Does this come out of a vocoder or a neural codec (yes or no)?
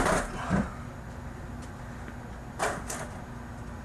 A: no